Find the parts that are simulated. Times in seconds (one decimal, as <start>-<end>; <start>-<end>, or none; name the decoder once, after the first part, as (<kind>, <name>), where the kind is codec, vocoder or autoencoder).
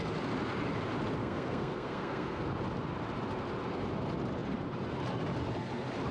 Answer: 1.2-2.4 (codec, SNAC)